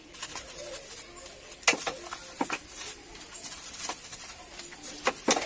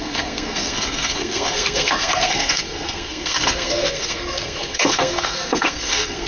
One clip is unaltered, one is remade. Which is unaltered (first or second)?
first